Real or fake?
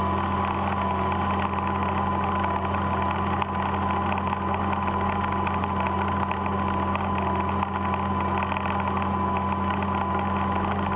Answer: real